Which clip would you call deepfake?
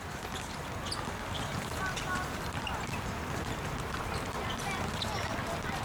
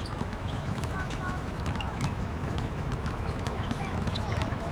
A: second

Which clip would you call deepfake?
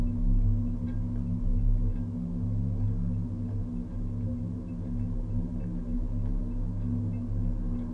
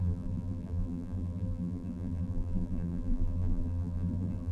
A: second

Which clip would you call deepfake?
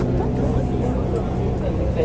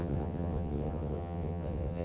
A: second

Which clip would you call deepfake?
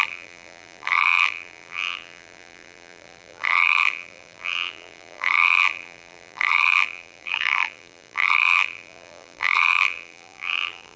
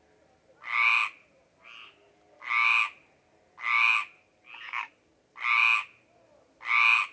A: first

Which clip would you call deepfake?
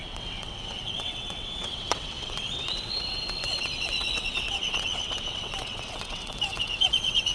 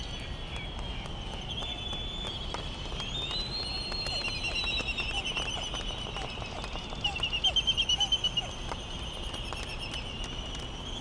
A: first